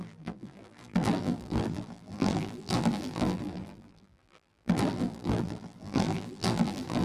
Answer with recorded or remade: remade